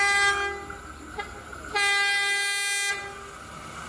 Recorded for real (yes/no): yes